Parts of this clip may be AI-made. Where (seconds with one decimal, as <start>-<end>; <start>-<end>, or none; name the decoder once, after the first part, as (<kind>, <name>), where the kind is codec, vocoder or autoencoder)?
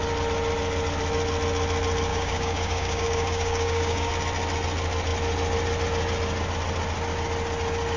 2.1-4.1 (codec, DAC)